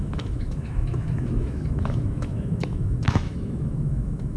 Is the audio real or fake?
fake